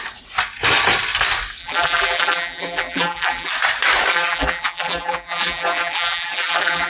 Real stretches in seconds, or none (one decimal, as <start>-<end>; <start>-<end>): 0.0-1.6; 3.5-4.1